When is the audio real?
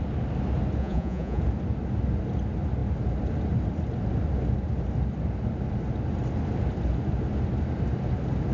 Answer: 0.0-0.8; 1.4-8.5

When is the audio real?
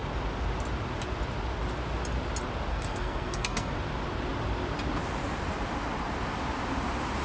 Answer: 0.0-2.7; 3.7-7.2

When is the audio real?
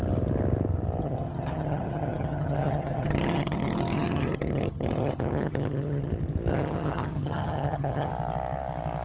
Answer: 0.0-1.0; 6.1-6.5; 8.1-9.0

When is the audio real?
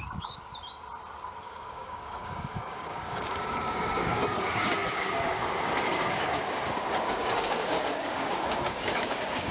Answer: 0.5-1.4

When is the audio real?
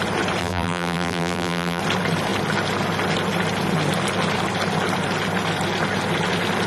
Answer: 0.0-0.4; 1.8-6.7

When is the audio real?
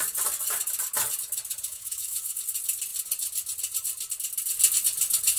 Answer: 0.0-1.7; 2.4-5.4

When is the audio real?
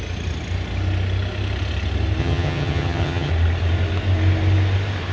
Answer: 0.0-2.2; 3.3-5.1